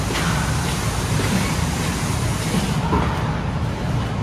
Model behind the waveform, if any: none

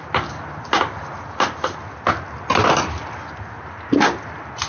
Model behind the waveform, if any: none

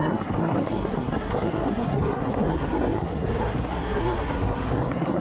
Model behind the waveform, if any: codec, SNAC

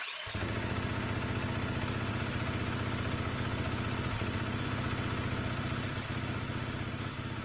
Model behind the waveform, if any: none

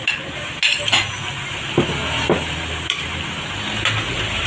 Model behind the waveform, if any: none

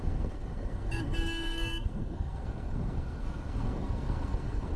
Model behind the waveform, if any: codec, SNAC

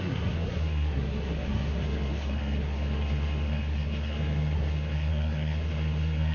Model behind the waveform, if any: codec, SNAC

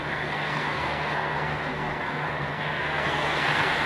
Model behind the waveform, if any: codec, SNAC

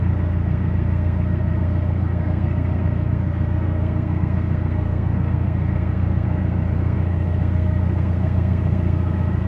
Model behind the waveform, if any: codec, SNAC